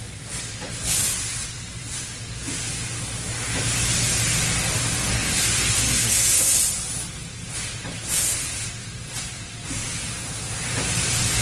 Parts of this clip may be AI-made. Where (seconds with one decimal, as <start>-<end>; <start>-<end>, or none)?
5.1-6.6